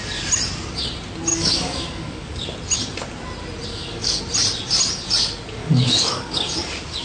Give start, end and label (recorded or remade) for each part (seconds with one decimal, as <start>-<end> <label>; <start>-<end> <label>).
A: 0.0-1.3 recorded; 1.3-2.4 remade; 2.4-3.7 recorded; 3.7-4.2 remade; 4.2-5.6 recorded; 5.6-6.5 remade; 6.5-7.0 recorded